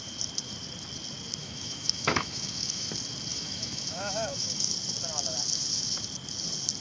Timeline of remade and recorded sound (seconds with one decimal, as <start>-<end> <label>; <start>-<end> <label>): 0.0-1.4 recorded; 1.4-2.9 remade; 2.9-3.3 recorded; 3.3-4.7 remade; 4.7-6.8 recorded